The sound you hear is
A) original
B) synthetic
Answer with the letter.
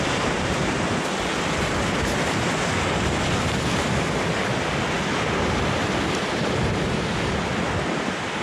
A